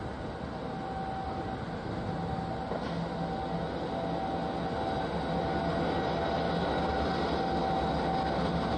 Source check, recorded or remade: recorded